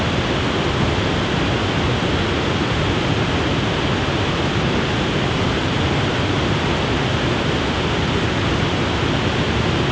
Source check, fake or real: real